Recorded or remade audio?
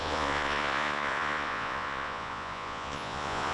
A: remade